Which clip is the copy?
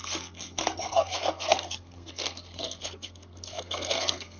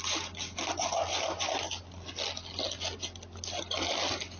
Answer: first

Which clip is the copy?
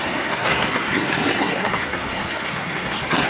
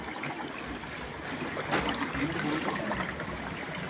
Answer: first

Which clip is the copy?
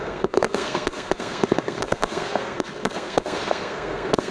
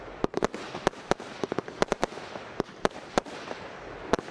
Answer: first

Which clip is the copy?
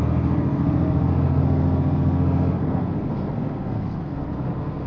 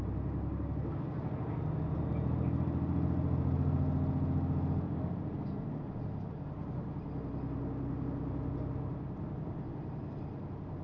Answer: first